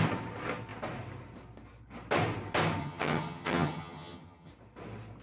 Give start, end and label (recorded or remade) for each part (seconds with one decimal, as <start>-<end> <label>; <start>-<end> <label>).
0.0-2.8 recorded; 2.8-4.5 remade; 4.5-5.2 recorded